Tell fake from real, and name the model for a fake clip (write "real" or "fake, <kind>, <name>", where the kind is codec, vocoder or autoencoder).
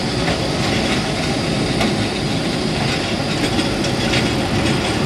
real